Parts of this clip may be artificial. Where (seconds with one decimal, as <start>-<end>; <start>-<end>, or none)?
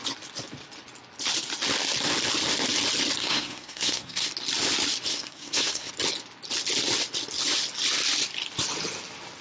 3.2-4.3; 5.1-5.9